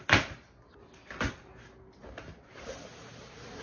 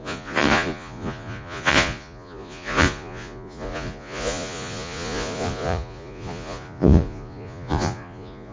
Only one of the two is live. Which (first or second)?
first